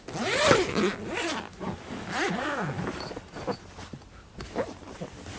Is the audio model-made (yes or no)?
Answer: no